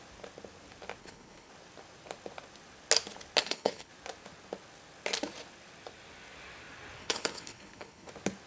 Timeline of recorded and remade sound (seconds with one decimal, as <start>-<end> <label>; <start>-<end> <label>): 0.0-1.0 recorded; 1.0-1.5 remade; 1.5-3.4 recorded; 3.4-3.9 remade; 3.9-7.0 recorded; 7.0-8.1 remade; 8.1-8.5 recorded